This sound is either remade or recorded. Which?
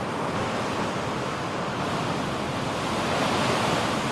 recorded